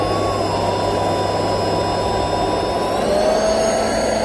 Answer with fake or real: real